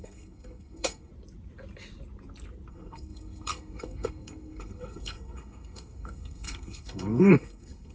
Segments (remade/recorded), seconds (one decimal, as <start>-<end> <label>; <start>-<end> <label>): 0.0-1.1 remade; 1.1-2.7 recorded; 2.7-7.9 remade